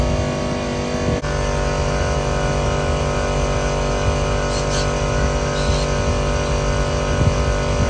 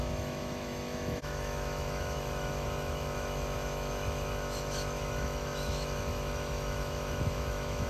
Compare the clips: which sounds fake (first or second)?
second